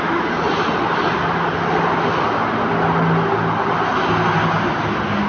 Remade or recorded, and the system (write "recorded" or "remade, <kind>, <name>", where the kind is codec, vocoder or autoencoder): recorded